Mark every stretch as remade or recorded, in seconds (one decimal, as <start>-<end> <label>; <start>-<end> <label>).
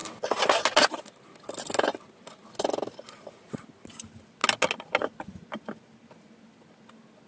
0.0-7.3 recorded